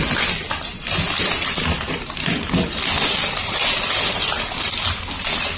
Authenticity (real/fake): real